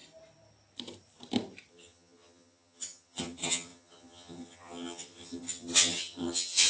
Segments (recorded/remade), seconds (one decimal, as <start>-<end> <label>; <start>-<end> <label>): 0.0-1.7 recorded; 1.7-6.7 remade